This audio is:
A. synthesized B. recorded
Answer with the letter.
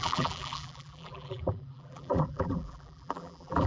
A